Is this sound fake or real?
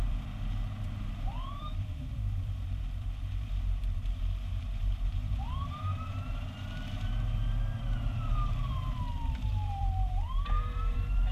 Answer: fake